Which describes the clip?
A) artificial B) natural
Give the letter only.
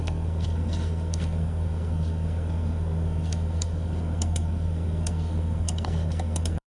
A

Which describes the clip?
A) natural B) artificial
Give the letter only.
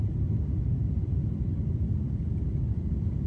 A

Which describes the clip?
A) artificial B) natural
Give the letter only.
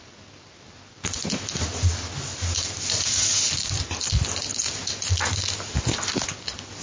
B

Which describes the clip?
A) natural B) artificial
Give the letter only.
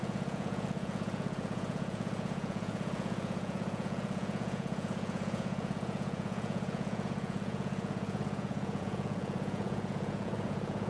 B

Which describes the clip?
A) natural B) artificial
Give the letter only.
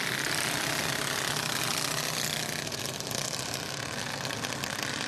A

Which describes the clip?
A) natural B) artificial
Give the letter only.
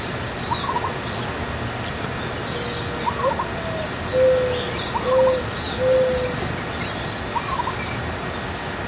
A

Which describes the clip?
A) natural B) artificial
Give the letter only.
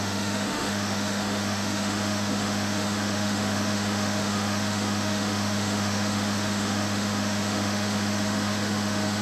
B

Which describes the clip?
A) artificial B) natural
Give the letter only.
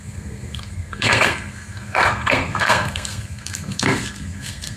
A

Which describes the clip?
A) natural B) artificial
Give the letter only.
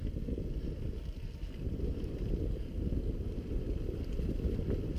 A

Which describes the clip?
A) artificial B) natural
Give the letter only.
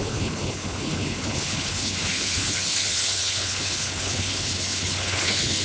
A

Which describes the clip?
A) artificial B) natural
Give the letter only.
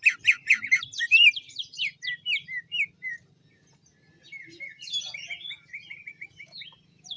A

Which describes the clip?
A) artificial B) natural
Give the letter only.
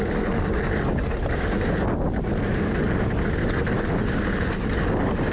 B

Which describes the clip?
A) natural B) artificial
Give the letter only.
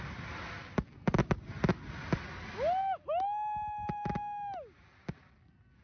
A